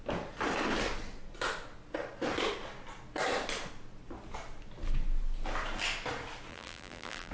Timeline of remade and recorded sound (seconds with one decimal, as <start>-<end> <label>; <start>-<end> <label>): 0.0-6.5 recorded; 6.5-7.3 remade